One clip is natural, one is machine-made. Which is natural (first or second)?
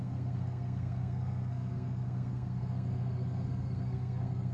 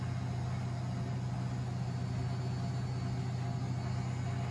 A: second